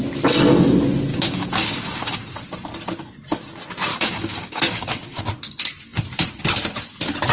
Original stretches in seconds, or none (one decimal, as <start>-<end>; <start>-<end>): 0.0-1.1; 2.4-3.9; 5.2-7.3